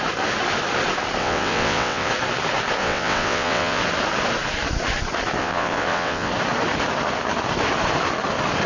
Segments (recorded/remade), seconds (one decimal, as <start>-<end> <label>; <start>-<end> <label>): 0.0-1.2 recorded; 1.2-2.1 remade; 2.1-2.8 recorded; 2.8-3.8 remade; 3.8-5.4 recorded; 5.4-6.3 remade; 6.3-8.7 recorded